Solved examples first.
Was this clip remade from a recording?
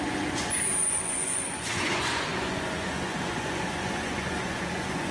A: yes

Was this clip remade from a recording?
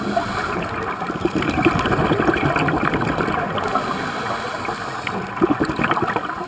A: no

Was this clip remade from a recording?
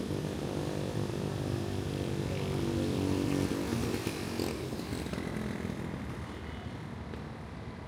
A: no